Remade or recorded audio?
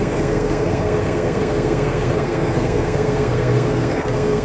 remade